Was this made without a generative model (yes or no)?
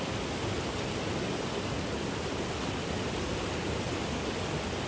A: yes